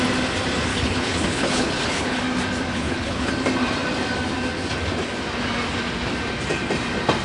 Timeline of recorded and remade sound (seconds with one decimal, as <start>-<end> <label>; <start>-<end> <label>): 0.0-0.7 recorded; 0.7-2.2 remade; 2.2-2.7 recorded; 2.7-3.3 remade; 3.3-7.2 recorded